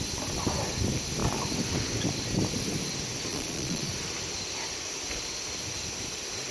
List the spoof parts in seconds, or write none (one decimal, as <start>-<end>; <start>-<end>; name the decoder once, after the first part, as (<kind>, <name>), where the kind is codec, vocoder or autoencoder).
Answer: 3.3-3.9 (vocoder, Vocos)